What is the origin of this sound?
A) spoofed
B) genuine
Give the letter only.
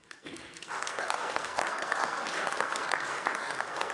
A